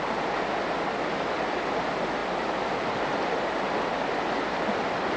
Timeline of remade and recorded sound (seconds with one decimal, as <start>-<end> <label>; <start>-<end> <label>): 0.0-2.2 recorded; 2.2-3.5 remade; 3.5-5.2 recorded